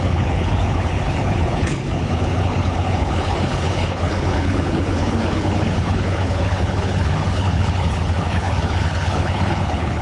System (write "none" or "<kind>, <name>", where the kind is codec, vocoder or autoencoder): codec, HILCodec